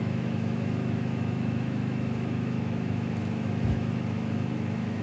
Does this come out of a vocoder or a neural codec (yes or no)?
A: yes